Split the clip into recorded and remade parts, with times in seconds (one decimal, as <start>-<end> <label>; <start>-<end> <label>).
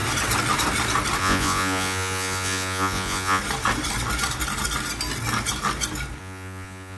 0.0-1.2 recorded; 1.2-3.4 remade; 3.4-6.2 recorded; 6.2-7.0 remade